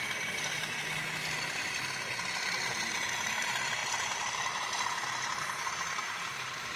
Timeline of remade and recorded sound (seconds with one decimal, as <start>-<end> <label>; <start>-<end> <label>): 0.0-0.8 remade; 0.8-2.7 recorded; 2.7-6.8 remade